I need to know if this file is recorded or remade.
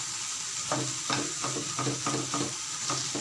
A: recorded